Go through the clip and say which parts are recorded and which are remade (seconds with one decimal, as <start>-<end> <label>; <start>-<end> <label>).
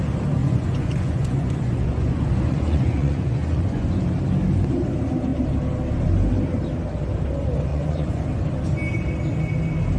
0.0-0.4 recorded; 0.4-4.0 remade; 4.0-7.7 recorded; 7.7-8.2 remade; 8.2-10.0 recorded